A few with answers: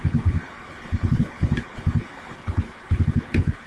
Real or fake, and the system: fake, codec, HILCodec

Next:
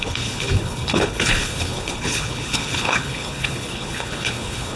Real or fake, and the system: fake, codec, HILCodec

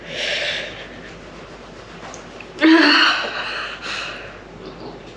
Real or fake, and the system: real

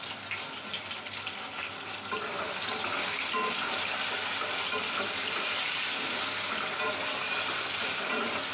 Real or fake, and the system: real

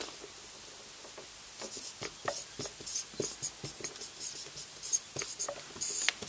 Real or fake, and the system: real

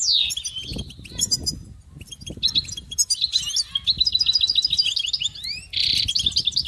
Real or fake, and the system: real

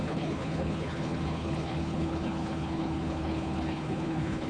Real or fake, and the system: fake, codec, HILCodec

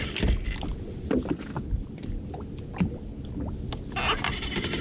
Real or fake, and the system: real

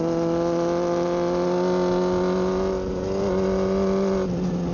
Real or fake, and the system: real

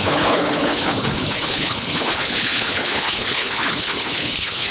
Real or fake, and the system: fake, codec, HILCodec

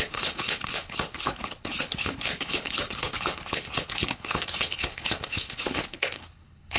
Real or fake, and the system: fake, codec, HILCodec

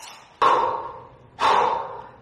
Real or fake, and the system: real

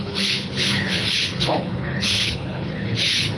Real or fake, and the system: fake, codec, HILCodec